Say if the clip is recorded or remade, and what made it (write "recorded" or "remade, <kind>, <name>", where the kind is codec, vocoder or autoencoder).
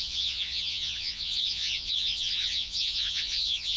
remade, vocoder, Vocos